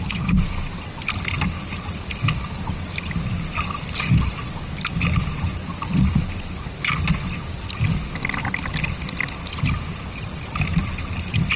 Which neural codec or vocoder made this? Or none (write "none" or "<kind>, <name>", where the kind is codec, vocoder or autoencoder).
none